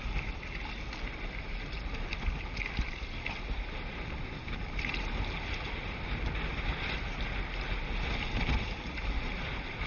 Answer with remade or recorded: recorded